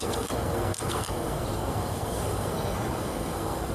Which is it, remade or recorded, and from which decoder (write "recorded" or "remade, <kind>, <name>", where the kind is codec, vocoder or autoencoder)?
remade, codec, SNAC